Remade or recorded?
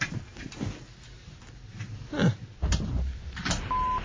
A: recorded